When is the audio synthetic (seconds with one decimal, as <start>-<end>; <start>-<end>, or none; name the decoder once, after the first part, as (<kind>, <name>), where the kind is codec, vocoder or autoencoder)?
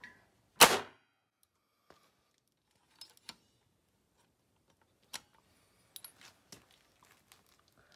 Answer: none